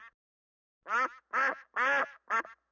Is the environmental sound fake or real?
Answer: real